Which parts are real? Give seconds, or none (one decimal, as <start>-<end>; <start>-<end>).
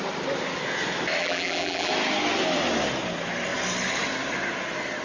0.0-1.2; 1.9-5.0